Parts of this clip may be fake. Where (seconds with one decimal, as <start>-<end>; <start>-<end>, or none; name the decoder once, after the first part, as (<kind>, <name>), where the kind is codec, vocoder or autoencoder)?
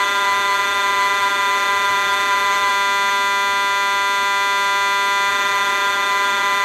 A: 0.0-2.7 (vocoder, Vocos); 5.3-6.6